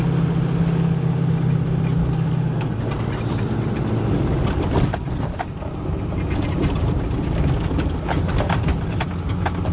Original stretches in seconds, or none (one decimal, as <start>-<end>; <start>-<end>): 0.0-2.0; 2.8-9.7